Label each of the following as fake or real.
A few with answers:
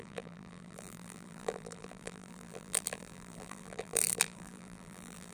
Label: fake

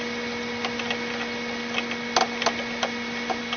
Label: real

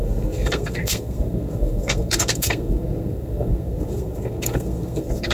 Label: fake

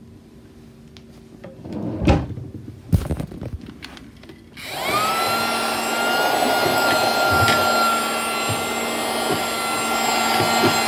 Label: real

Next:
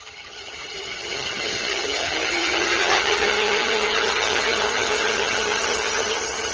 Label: fake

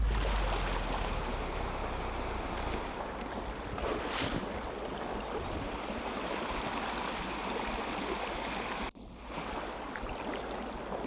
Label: real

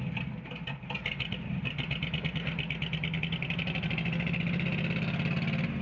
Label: real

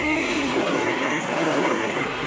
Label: fake